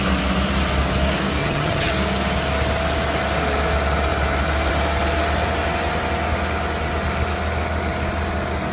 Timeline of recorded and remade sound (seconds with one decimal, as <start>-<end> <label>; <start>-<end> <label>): 0.0-1.4 recorded; 1.4-1.9 remade; 1.9-8.7 recorded